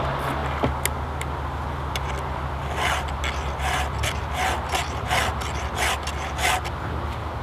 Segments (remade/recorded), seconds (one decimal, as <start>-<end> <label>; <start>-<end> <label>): 0.0-7.4 recorded